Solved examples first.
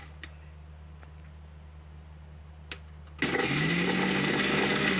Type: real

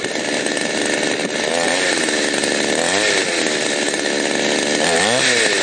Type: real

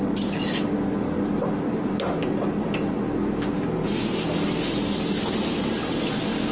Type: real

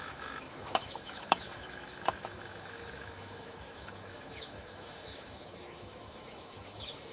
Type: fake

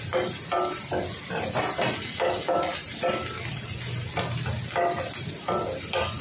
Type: real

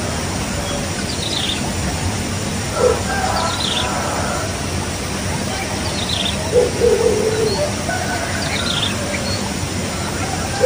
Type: real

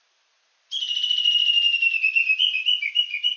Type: real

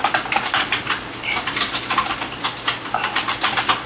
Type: real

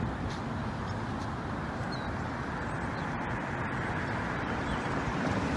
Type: real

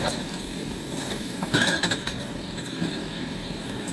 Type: fake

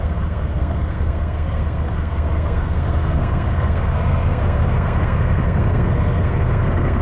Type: fake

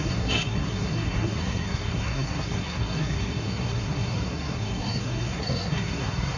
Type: fake